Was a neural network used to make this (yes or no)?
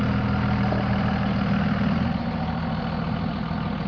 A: no